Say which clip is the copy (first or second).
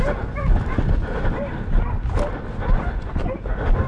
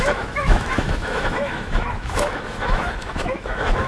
second